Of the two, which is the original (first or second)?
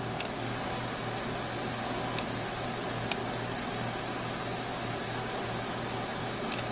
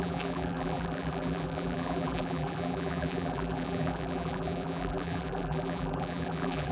first